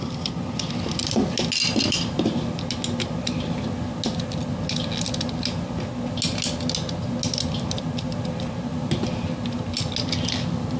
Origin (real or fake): real